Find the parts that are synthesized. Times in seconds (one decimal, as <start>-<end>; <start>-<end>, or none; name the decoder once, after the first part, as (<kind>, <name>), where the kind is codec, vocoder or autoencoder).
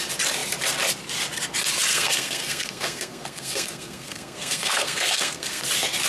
1.9-5.6 (codec, SNAC)